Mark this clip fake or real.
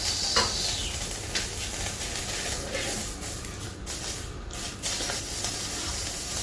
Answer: real